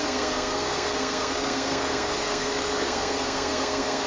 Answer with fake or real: fake